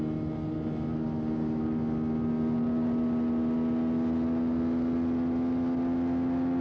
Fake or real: real